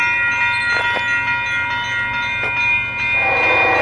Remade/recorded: recorded